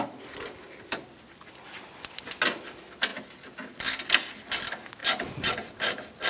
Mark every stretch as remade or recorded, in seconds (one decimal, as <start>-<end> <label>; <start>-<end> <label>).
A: 0.0-6.3 recorded